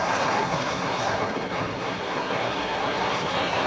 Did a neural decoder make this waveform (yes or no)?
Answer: yes